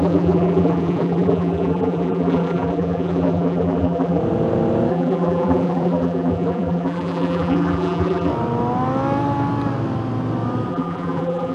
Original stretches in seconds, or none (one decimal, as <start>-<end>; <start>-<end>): 4.2-4.9; 8.3-10.7